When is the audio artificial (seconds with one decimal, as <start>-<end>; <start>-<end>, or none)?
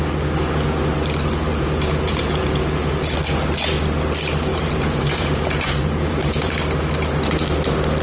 1.5-3.0; 4.5-6.5